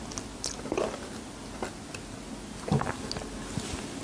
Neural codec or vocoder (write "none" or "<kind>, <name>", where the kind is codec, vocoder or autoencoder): none